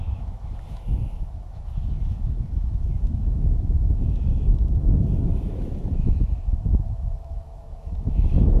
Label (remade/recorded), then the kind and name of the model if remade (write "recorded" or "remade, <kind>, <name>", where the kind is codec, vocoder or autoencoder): remade, autoencoder, DAC-VAE